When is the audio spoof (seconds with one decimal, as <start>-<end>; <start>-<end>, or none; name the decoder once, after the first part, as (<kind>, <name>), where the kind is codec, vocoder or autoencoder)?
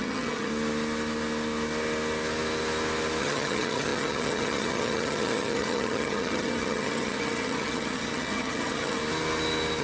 0.0-0.5 (vocoder, HiFi-GAN); 3.2-9.0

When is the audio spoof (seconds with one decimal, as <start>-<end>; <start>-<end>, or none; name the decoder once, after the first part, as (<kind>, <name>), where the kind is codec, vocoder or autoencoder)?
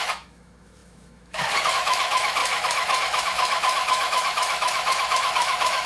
0.0-5.9 (autoencoder, DAC-VAE)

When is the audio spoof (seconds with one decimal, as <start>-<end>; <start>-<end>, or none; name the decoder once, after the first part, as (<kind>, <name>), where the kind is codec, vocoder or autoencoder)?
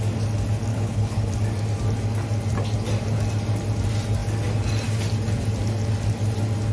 0.7-1.3 (codec, HILCodec)